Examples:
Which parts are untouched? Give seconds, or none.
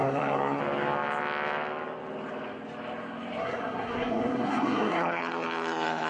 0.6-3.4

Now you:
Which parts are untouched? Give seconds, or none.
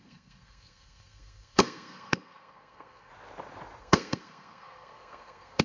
3.1-3.8